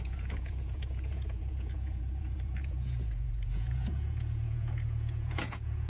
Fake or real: fake